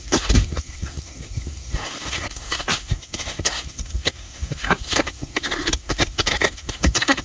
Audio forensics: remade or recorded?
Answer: remade